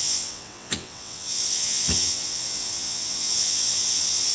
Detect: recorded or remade remade